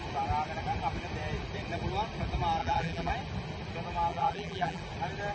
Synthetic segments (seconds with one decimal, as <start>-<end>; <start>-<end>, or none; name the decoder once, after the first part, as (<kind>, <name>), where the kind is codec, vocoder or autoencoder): 2.6-3.1 (vocoder, BigVGAN v2); 4.1-4.8